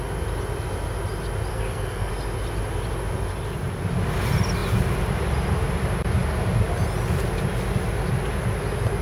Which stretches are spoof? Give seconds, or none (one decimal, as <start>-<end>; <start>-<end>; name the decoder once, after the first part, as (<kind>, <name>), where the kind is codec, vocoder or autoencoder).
1.5-2.1 (codec, SNAC)